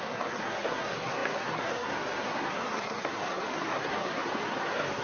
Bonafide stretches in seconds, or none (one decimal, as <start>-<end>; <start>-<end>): none